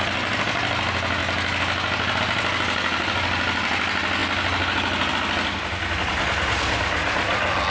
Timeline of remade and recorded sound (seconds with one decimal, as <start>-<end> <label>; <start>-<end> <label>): 0.0-7.7 recorded